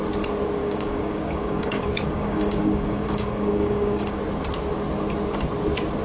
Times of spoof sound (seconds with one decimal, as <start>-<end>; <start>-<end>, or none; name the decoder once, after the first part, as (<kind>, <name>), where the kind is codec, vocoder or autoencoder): 0.6-4.2 (codec, DAC)